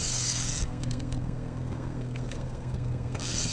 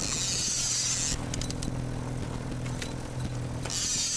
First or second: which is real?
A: second